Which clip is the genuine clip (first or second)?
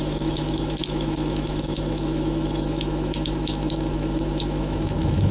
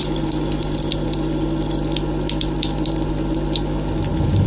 second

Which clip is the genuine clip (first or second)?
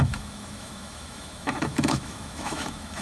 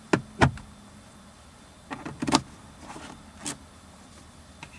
second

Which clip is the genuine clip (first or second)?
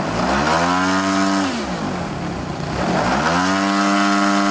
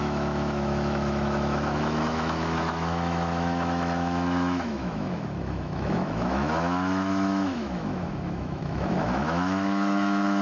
first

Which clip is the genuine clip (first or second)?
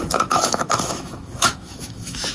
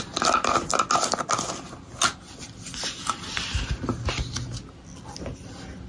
second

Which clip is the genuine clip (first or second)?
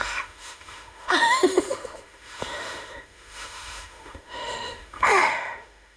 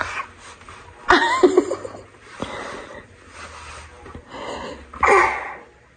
second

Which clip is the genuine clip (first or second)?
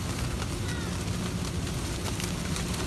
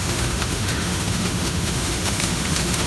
first